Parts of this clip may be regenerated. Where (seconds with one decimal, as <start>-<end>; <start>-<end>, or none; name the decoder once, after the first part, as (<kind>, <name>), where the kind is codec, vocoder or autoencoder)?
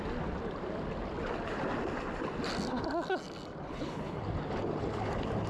3.7-4.2 (codec, HILCodec)